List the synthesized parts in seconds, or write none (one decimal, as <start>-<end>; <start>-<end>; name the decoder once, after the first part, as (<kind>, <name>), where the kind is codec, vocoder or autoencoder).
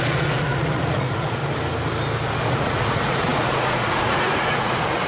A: 0.0-1.4 (vocoder, Vocos); 2.5-5.1